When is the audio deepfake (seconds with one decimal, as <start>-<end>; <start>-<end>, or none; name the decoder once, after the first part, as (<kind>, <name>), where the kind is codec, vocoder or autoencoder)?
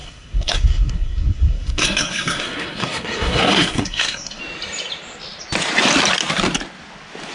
0.0-4.4 (codec, SNAC)